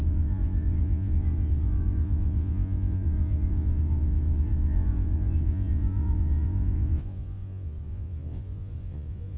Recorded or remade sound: remade